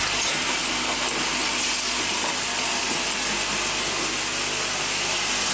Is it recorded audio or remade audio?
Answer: recorded